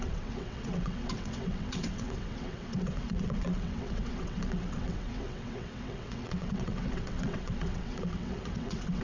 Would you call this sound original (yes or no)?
no